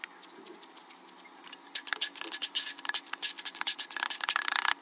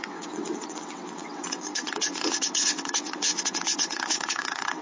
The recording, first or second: first